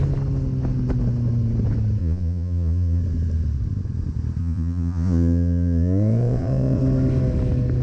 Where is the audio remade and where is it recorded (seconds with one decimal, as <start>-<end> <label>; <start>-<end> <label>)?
0.0-2.0 recorded; 2.0-3.0 remade; 3.0-4.4 recorded; 4.4-6.8 remade; 6.8-7.8 recorded